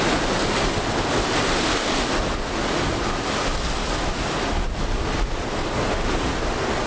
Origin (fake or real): real